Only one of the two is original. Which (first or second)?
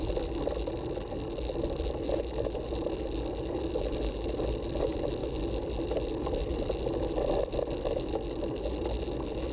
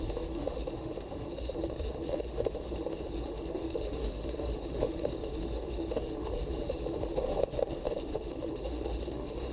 first